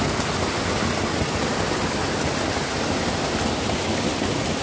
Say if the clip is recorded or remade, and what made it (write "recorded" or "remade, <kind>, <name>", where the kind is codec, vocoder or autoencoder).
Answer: recorded